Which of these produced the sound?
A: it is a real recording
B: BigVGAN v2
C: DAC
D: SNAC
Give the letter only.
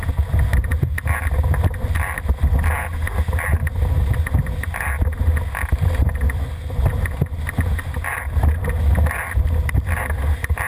A